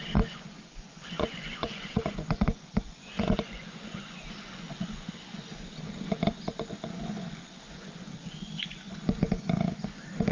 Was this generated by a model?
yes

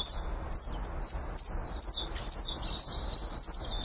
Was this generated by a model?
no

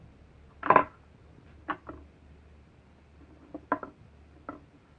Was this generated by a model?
yes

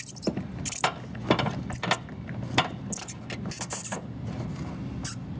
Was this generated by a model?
no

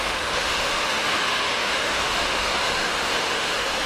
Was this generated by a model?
yes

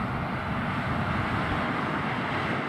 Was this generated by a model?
no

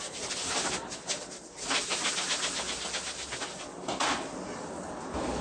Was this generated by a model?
no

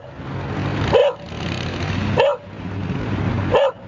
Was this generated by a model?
no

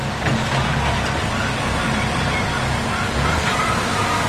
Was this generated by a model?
no